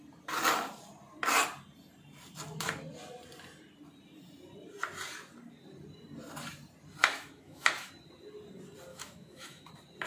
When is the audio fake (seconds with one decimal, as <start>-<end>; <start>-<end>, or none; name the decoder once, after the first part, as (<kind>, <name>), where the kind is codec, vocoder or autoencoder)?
7.0-7.9 (autoencoder, DAC-VAE); 8.9-9.7